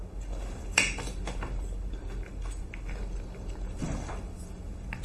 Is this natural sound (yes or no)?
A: yes